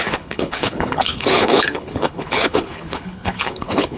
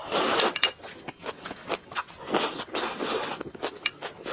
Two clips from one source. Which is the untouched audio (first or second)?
second